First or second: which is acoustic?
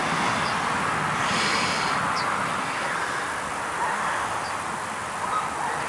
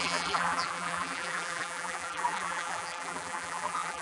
first